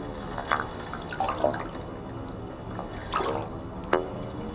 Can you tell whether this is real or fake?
real